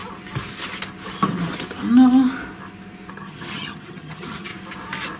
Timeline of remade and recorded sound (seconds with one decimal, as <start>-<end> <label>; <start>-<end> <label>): 0.0-3.1 recorded; 3.1-4.5 remade; 4.5-5.2 recorded